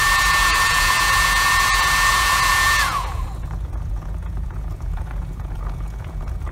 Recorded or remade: remade